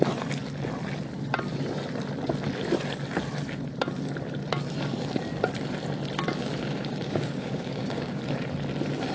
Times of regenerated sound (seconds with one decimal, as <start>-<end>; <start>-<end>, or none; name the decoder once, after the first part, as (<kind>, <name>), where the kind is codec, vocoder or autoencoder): 6.4-8.2 (codec, DAC)